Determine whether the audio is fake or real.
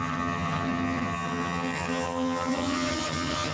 fake